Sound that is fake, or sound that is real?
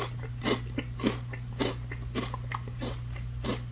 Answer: real